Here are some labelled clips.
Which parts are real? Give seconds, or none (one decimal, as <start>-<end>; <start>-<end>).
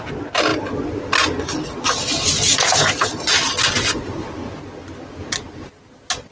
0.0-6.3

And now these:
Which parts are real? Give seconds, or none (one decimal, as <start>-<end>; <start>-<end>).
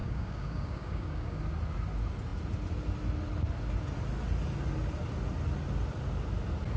1.4-6.8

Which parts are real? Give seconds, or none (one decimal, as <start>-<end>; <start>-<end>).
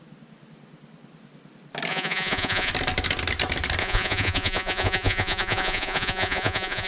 0.0-1.9; 2.7-3.8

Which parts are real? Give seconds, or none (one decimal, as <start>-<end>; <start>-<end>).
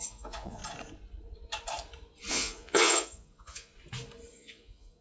0.6-2.3; 3.7-4.3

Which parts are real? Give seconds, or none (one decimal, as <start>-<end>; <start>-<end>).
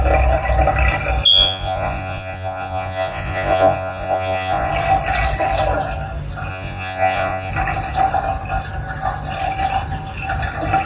0.0-1.3; 4.7-6.5; 7.5-10.8